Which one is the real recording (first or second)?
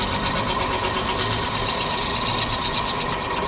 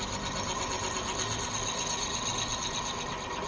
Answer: second